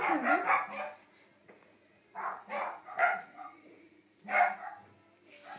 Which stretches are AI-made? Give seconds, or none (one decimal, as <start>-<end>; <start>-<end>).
1.4-4.2

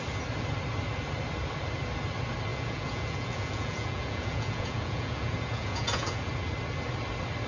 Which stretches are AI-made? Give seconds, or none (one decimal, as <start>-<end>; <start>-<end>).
2.5-6.3

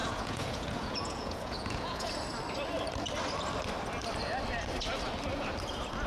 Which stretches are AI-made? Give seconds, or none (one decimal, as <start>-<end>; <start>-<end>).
0.0-2.1